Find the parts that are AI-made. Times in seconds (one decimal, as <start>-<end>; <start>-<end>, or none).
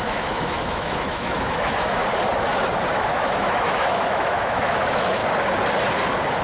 0.0-2.0; 2.9-5.2